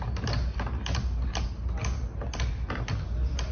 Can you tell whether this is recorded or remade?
recorded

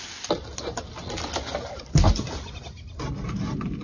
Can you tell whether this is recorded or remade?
recorded